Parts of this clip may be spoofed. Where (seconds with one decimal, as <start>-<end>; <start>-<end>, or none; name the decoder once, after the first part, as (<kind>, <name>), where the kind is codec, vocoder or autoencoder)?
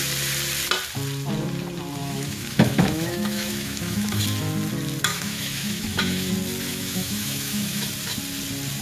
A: 2.0-4.2 (autoencoder, DAC-VAE); 5.1-6.3; 6.7-7.9